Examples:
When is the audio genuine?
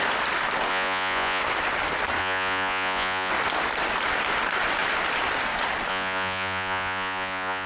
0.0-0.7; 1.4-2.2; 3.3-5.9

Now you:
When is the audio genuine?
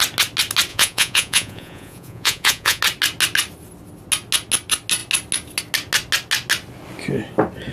0.0-0.7; 2.8-7.7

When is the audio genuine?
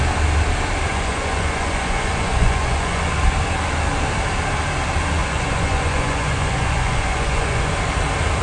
0.0-0.9; 3.0-5.2; 7.7-8.4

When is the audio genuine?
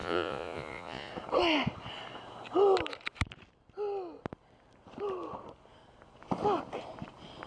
1.1-7.5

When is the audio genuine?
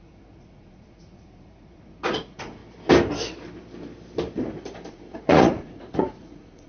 2.6-4.9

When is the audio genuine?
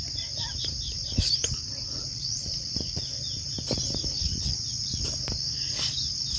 0.0-2.1; 3.0-4.2; 5.0-6.4